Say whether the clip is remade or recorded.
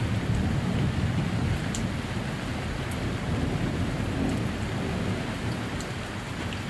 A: recorded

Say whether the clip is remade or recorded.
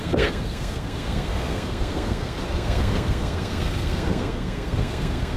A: remade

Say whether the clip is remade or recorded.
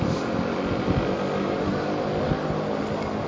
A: recorded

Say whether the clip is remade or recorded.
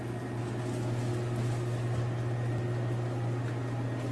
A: recorded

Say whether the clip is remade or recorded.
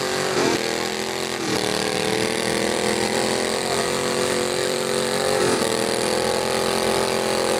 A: remade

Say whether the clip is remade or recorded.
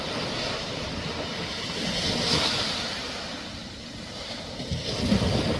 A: recorded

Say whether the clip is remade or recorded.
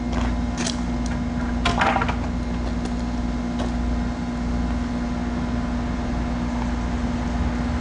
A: recorded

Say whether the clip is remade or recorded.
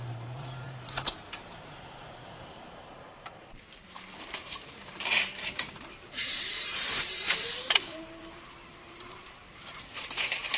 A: remade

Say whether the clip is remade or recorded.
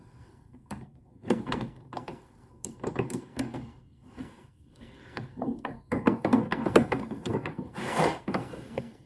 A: remade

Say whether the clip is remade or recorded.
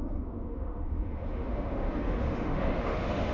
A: remade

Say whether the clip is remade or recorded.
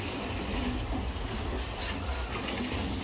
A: recorded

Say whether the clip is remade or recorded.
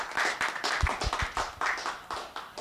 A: recorded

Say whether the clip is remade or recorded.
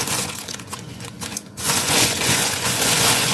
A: remade